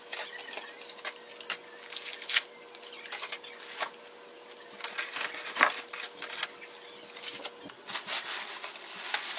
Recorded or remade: recorded